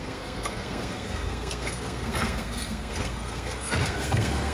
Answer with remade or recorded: remade